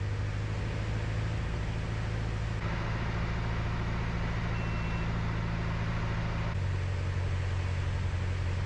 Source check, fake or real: real